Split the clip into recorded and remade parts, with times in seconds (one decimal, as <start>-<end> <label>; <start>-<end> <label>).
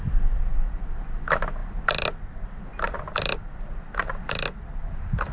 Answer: 0.0-5.3 recorded